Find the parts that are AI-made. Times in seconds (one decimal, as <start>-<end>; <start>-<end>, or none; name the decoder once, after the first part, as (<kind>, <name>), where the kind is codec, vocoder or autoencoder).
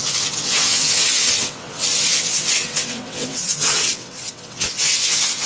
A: 0.0-5.5 (vocoder, WaveNeXt)